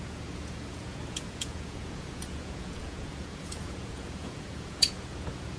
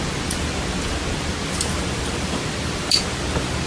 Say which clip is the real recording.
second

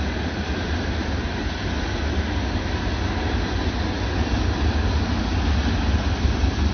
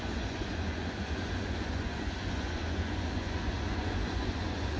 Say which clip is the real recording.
first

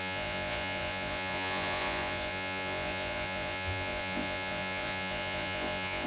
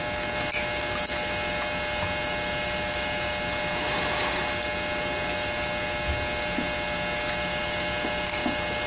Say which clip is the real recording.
second